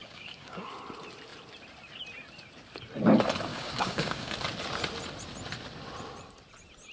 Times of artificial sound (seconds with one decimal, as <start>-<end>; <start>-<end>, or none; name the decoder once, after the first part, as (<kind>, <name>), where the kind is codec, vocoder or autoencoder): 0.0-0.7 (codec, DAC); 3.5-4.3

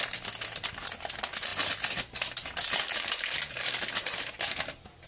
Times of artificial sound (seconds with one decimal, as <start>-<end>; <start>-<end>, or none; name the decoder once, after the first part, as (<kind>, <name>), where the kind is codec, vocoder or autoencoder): none

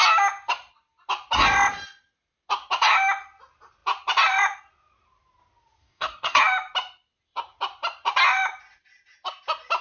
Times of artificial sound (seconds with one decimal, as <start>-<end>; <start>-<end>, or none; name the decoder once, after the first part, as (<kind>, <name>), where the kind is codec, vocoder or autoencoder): 5.8-6.4 (codec, DAC)

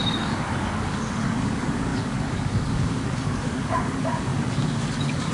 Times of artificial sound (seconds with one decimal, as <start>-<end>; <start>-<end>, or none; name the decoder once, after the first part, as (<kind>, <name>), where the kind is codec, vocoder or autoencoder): 0.0-5.3 (codec, DAC)

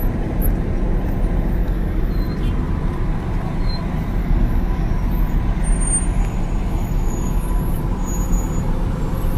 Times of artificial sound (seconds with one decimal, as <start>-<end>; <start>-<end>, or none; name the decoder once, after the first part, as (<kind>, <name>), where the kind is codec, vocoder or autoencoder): 1.6-2.1 (codec, DAC); 4.2-4.9; 6.8-7.7

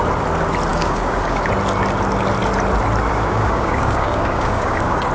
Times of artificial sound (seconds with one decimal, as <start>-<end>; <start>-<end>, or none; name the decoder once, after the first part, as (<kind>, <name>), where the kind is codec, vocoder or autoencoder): 0.7-1.4 (codec, DAC); 3.1-5.1

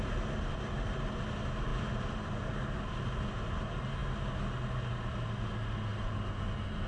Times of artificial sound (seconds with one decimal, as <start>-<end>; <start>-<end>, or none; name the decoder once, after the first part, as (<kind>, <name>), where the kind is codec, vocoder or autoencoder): none

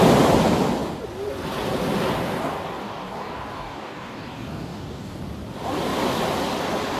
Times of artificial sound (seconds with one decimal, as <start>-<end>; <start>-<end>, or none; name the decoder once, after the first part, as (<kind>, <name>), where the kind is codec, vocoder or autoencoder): 2.8-5.2 (codec, DAC)